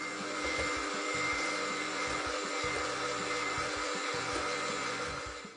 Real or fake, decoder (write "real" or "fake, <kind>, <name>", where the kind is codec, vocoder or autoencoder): fake, vocoder, Vocos